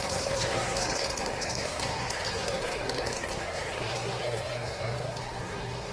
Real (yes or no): no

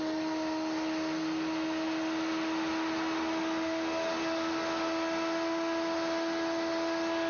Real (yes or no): yes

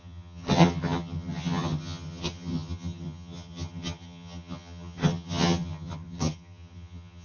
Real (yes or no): no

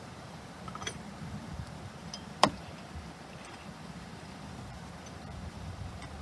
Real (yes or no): no